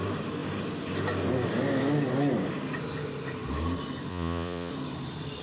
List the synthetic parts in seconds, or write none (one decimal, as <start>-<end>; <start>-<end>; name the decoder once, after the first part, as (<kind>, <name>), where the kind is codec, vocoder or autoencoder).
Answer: 4.1-4.7 (vocoder, Vocos)